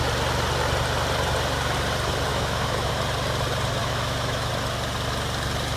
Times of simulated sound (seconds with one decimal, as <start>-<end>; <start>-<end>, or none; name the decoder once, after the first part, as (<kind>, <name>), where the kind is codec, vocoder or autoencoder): 2.3-2.9 (autoencoder, DAC-VAE); 3.8-4.5